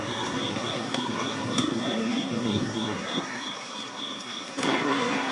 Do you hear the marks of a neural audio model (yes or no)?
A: yes